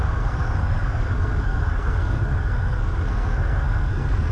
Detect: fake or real fake